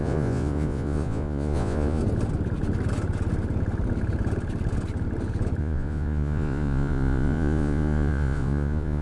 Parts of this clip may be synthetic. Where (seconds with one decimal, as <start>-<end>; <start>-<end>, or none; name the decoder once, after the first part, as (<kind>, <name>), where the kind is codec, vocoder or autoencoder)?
0.0-2.0 (vocoder, Vocos); 5.6-9.0